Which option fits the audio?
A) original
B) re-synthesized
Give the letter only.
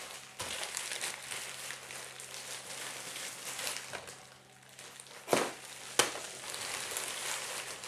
A